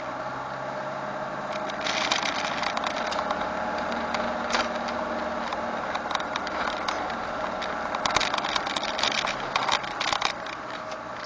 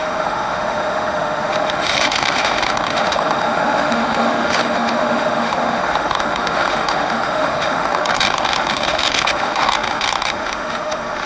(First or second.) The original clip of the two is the first